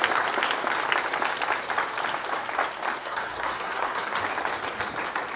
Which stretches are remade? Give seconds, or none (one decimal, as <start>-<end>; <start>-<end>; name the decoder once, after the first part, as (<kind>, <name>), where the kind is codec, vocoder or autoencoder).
3.0-4.2 (codec, SNAC)